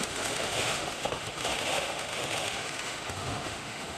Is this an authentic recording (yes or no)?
no